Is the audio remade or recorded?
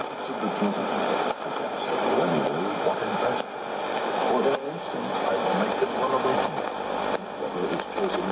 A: recorded